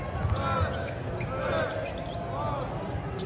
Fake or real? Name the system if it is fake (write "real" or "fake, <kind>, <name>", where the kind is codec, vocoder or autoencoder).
real